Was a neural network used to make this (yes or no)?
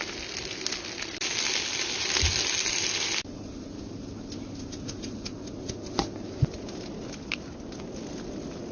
no